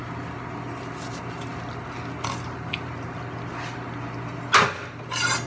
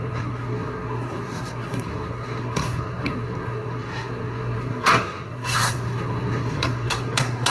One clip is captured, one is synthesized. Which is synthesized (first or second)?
second